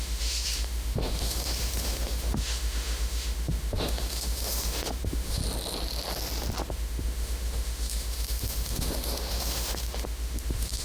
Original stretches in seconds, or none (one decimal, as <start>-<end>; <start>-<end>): 5.4-6.7